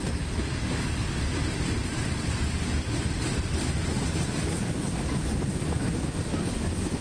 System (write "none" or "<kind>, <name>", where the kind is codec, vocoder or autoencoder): none